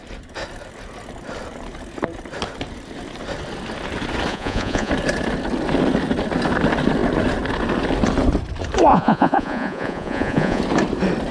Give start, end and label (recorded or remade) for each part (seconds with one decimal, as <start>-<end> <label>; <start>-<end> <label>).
0.0-4.3 recorded; 4.3-4.9 remade; 4.9-8.9 recorded; 8.9-10.6 remade; 10.6-11.3 recorded